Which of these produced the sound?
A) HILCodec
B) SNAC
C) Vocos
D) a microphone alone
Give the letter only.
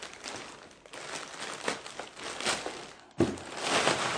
D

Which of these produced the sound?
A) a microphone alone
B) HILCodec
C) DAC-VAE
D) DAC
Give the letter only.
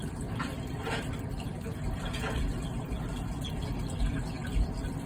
A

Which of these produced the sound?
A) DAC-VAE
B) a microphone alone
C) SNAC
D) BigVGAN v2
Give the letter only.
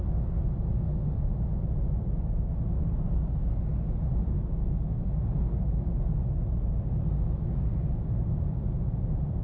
B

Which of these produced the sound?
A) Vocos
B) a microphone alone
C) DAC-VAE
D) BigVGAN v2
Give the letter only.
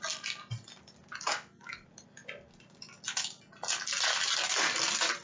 B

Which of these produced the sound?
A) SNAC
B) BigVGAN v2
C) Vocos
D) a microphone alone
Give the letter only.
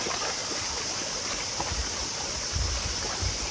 D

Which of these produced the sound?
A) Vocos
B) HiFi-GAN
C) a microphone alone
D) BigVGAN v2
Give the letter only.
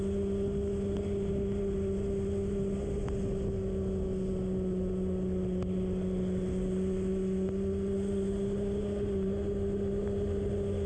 C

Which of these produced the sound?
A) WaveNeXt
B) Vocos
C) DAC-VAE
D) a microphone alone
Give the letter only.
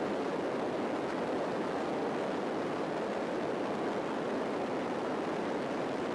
D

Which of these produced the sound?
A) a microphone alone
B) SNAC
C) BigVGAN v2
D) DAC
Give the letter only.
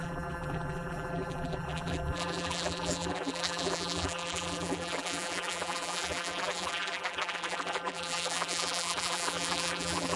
C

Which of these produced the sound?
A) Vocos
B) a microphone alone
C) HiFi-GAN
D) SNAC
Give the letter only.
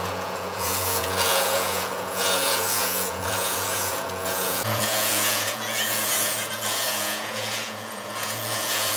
A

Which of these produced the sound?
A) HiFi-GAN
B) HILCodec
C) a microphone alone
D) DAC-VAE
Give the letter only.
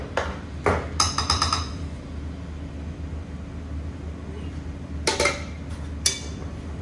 C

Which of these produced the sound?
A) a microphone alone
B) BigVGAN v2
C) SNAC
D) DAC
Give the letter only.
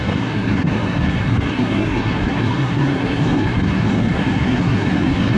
C